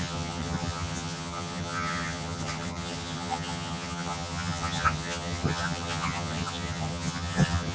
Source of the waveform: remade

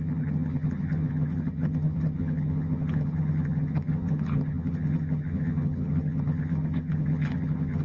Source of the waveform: remade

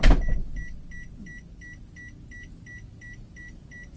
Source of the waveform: recorded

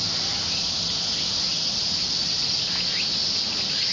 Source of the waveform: recorded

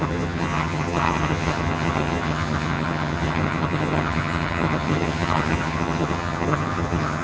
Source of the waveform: remade